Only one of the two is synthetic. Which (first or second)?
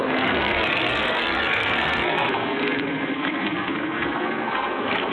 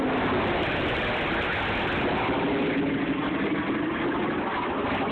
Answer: first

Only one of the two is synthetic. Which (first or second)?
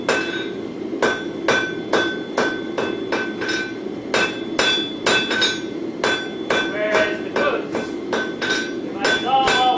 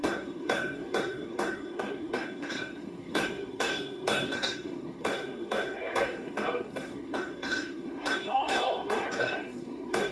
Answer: second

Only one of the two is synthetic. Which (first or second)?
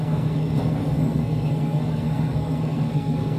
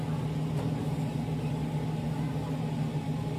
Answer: first